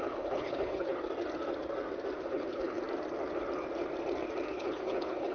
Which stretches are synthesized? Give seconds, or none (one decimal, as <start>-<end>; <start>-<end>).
0.0-0.9; 2.2-2.8; 4.5-5.3